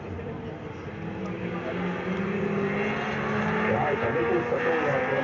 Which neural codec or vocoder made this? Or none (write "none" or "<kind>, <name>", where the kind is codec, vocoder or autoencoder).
none